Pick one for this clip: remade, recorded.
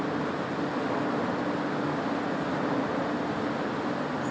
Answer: recorded